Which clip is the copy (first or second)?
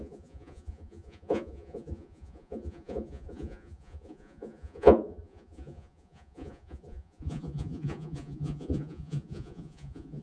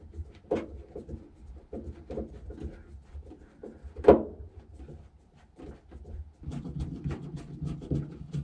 first